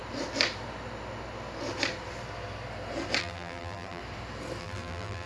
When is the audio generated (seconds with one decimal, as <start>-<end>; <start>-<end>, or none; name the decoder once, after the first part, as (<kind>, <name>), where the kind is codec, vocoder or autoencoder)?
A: 3.2-4.0 (vocoder, BigVGAN v2); 4.6-5.3